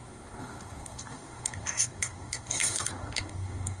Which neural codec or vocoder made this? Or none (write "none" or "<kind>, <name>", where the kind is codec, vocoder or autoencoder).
codec, SNAC